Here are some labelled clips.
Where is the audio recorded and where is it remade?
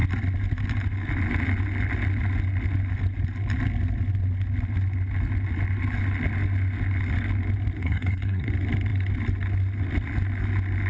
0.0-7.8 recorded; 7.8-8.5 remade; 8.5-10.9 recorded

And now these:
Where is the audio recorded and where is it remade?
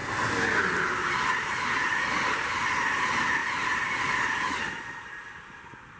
0.0-3.4 recorded; 3.4-4.8 remade; 4.8-6.0 recorded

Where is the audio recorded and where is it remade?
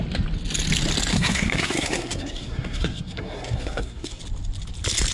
0.0-1.1 recorded; 1.1-4.2 remade; 4.2-5.1 recorded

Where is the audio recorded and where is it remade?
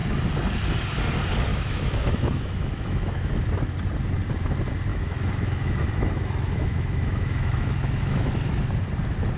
0.0-1.5 recorded; 1.5-3.3 remade; 3.3-4.9 recorded; 4.9-8.6 remade; 8.6-9.4 recorded